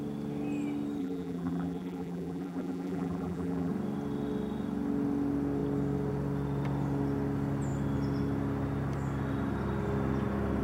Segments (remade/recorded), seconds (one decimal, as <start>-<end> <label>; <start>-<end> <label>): 0.0-1.0 recorded; 1.0-3.7 remade; 3.7-10.6 recorded